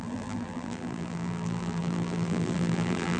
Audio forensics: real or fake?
fake